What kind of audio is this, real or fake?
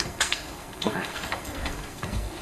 fake